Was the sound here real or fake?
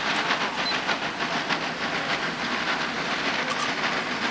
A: real